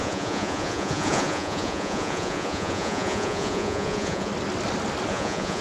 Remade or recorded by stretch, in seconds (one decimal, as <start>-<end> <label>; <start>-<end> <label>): 0.0-4.3 remade; 4.3-5.1 recorded; 5.1-5.6 remade